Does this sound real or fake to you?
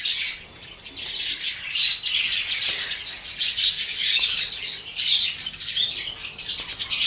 real